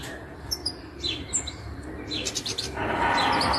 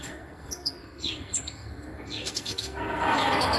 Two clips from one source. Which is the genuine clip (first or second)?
first